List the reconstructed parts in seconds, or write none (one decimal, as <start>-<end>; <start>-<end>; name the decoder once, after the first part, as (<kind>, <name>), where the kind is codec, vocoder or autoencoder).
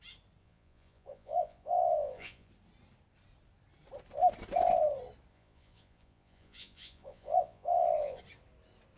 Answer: 0.4-2.5 (vocoder, Vocos); 5.3-8.2